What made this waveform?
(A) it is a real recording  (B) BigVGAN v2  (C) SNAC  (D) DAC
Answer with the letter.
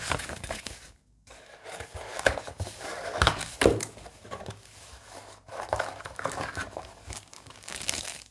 D